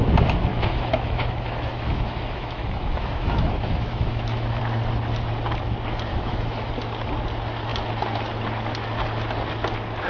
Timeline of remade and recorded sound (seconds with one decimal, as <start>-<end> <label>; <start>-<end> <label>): 0.0-0.5 recorded; 0.5-4.6 remade; 4.6-6.1 recorded; 6.1-6.7 remade; 6.7-10.1 recorded